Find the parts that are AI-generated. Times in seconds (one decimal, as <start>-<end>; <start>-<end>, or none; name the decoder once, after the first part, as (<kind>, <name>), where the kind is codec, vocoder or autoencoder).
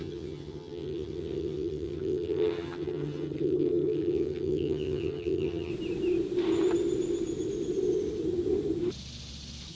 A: 0.0-5.7 (vocoder, HiFi-GAN)